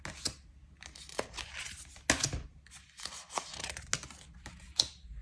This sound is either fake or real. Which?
real